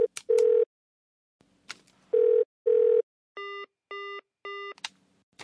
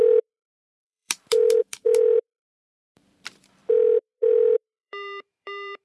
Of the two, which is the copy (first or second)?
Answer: second